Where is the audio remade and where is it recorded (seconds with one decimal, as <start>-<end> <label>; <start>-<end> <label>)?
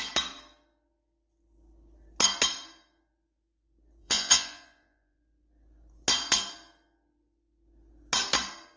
0.0-4.0 recorded; 4.0-5.2 remade; 5.2-8.8 recorded